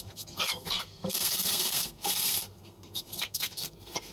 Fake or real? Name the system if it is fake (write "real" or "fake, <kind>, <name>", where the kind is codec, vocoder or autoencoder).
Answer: fake, codec, SNAC